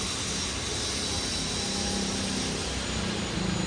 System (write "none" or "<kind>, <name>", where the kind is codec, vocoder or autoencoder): none